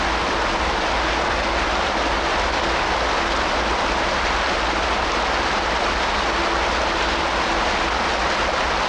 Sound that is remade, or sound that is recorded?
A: recorded